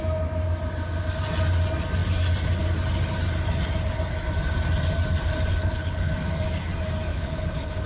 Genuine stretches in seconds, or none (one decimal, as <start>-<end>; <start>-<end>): 0.0-5.6; 6.1-7.1